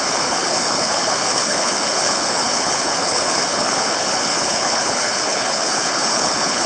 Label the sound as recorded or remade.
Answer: remade